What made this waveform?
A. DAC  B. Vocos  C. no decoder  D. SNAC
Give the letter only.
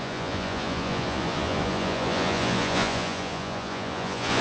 B